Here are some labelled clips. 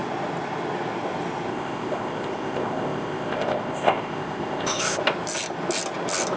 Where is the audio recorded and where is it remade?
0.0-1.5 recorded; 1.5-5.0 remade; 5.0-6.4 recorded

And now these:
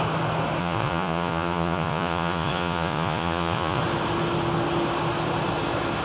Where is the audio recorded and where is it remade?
0.0-0.6 recorded; 0.6-3.8 remade; 3.8-6.0 recorded

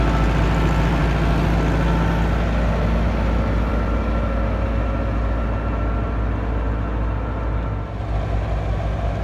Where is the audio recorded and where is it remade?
0.0-9.2 recorded

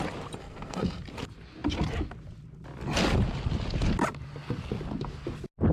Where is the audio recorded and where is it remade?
0.0-0.4 recorded; 0.4-1.0 remade; 1.0-5.7 recorded

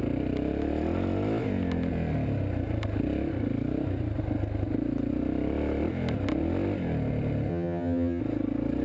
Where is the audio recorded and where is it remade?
0.0-7.5 recorded; 7.5-8.2 remade; 8.2-8.8 recorded

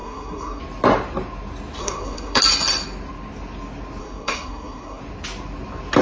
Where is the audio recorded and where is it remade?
0.0-0.6 remade; 0.6-1.8 recorded; 1.8-2.4 remade; 2.4-4.0 recorded; 4.0-5.0 remade; 5.0-6.0 recorded

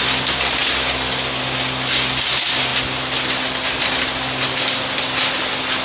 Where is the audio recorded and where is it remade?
0.0-5.8 recorded

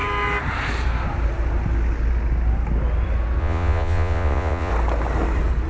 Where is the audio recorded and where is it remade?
0.0-3.4 recorded; 3.4-4.7 remade; 4.7-5.7 recorded